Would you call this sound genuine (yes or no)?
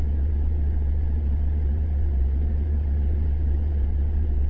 no